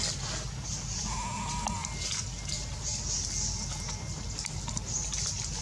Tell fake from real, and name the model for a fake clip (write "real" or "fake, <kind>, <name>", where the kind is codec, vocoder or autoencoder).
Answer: real